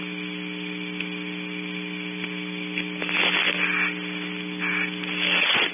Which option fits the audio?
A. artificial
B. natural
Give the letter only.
B